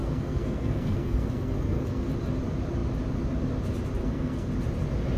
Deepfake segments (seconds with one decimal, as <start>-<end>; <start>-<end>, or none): 0.0-2.1; 4.0-4.5